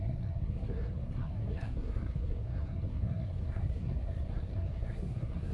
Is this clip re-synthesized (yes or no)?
yes